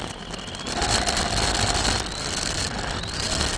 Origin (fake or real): real